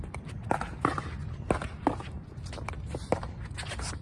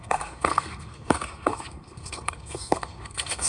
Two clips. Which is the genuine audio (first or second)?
first